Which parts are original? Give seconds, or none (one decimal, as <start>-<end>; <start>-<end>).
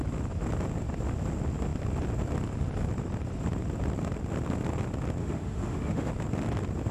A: 0.0-5.2; 6.1-6.9